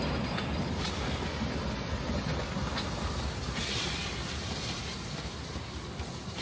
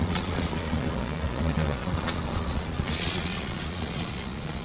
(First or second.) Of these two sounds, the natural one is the first